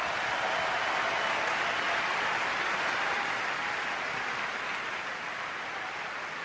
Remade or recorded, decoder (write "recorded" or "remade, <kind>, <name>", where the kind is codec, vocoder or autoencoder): recorded